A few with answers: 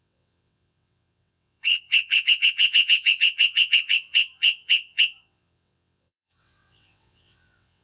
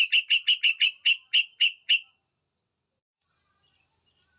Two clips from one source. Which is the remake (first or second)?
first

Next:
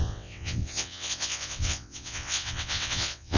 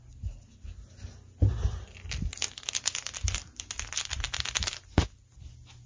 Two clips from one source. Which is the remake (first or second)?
first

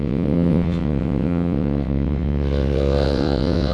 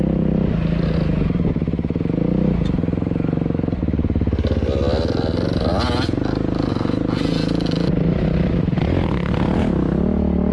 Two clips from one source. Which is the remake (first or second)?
first